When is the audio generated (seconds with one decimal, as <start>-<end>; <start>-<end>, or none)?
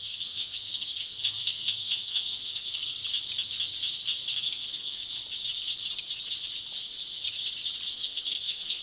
0.0-3.0; 4.4-5.0; 7.9-8.8